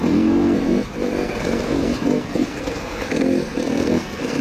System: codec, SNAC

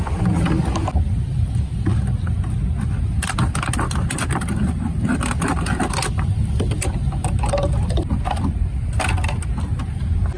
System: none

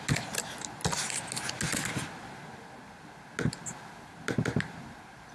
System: none